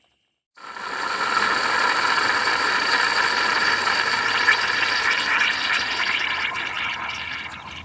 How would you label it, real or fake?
real